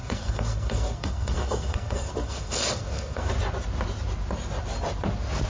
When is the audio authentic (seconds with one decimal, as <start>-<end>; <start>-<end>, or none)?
3.3-5.5